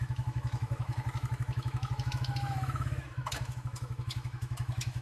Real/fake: fake